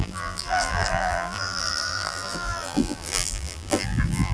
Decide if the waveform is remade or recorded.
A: remade